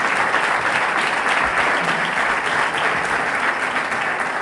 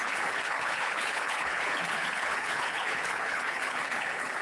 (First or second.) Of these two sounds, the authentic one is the first